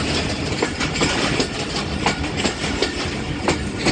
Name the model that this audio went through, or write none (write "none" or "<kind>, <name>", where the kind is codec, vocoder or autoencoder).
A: none